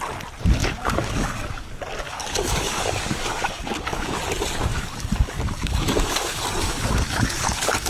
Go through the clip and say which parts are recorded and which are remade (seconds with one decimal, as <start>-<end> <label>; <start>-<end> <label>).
0.0-0.6 recorded; 0.6-4.2 remade; 4.2-4.7 recorded; 4.7-7.9 remade